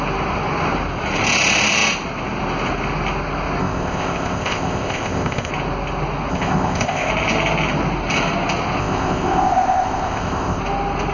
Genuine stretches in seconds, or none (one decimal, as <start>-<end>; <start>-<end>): 0.0-3.6; 5.5-6.3; 7.1-8.8; 10.6-11.1